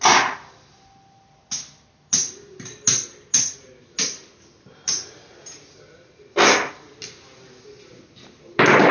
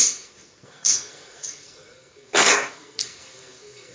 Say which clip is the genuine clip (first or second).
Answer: first